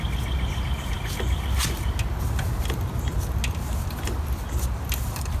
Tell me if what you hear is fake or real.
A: real